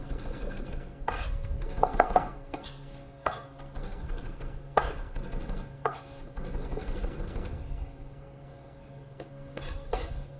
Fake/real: fake